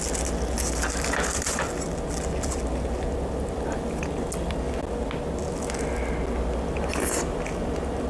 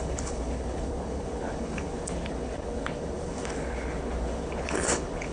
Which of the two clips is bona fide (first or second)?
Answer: first